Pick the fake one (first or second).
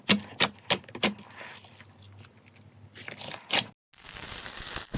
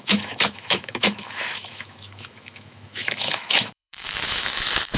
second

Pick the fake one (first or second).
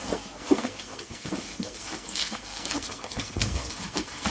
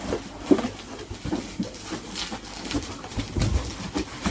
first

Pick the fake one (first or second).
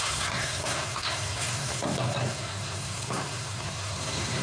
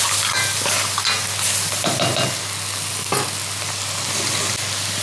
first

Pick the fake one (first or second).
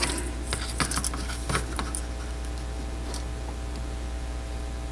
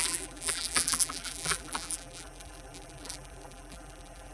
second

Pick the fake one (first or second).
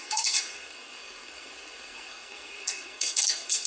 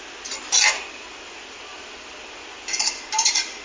first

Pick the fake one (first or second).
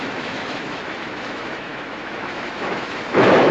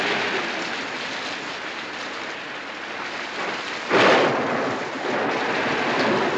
first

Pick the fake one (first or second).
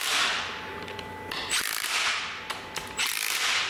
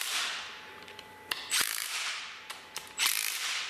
second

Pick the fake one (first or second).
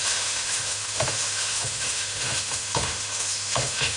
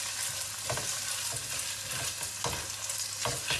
first